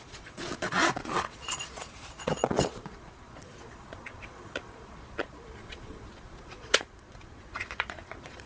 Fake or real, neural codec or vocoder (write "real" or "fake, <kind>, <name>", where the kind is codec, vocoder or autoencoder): fake, vocoder, Vocos